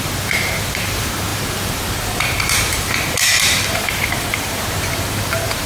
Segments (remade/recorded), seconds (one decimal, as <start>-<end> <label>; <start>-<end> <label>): 0.0-5.7 remade